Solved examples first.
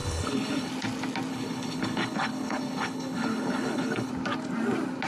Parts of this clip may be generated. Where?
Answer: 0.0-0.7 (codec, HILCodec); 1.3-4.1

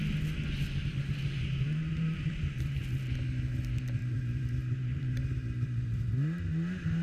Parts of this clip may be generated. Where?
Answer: 0.9-2.8 (vocoder, BigVGAN v2); 4.0-6.1

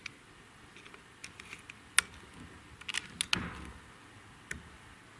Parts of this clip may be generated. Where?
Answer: none